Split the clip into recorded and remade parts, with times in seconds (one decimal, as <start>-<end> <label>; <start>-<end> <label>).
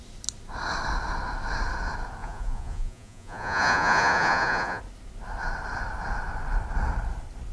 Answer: 0.0-2.2 recorded; 2.2-4.8 remade; 4.8-7.5 recorded